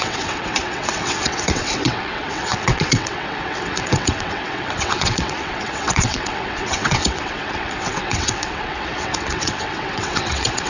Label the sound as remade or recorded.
remade